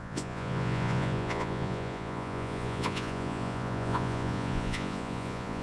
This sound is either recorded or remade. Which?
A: remade